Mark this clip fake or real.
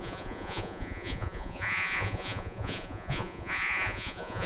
fake